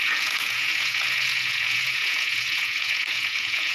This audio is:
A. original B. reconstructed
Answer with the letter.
B